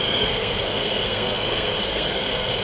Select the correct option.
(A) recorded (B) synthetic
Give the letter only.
B